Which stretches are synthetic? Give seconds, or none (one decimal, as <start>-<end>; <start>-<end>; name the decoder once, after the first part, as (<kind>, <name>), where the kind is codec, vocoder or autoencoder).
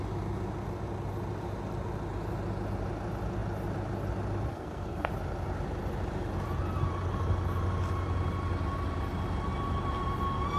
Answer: 4.5-5.1 (codec, SNAC)